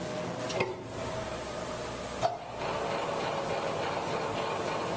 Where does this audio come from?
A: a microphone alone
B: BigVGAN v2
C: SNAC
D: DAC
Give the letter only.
A